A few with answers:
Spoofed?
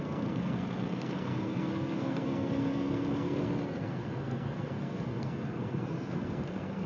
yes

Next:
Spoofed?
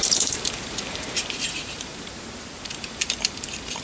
yes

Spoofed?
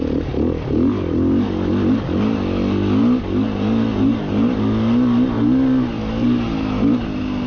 no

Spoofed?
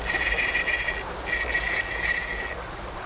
no